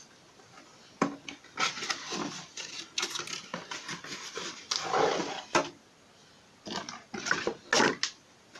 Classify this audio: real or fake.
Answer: real